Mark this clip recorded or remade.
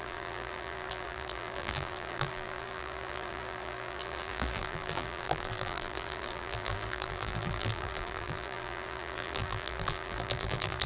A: remade